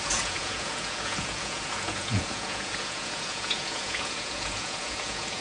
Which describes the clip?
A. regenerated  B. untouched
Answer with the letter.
A